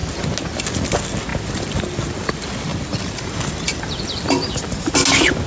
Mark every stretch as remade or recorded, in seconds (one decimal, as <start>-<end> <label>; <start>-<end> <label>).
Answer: 0.0-2.7 recorded; 2.7-4.9 remade; 4.9-5.5 recorded